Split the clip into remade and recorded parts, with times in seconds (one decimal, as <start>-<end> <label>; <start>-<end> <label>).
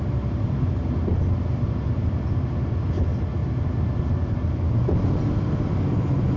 0.0-6.4 recorded